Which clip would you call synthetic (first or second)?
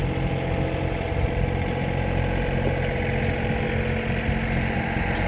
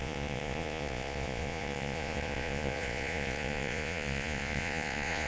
second